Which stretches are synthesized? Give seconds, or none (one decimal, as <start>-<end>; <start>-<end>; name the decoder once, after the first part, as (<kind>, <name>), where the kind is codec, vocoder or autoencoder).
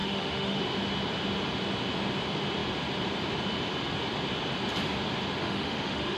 0.0-0.6 (autoencoder, DAC-VAE); 5.4-6.2